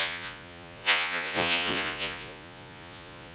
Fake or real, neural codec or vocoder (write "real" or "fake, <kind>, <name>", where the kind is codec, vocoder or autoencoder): fake, vocoder, Vocos